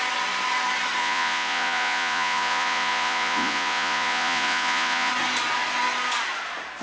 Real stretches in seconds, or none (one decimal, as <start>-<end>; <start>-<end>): 0.0-1.0; 5.1-6.8